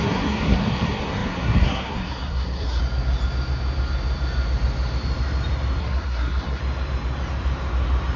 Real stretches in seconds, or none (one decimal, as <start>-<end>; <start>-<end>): 2.8-5.8; 6.6-8.2